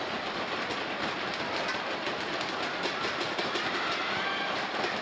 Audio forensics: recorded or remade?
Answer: recorded